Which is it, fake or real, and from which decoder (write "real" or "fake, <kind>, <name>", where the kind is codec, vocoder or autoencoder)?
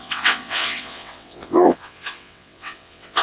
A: fake, vocoder, WaveNeXt